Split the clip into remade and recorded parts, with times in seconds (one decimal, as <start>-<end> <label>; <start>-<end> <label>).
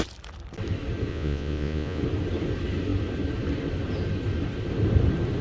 0.0-1.1 recorded; 1.1-2.0 remade; 2.0-5.4 recorded